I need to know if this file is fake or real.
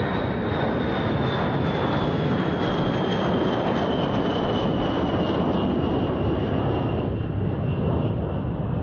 real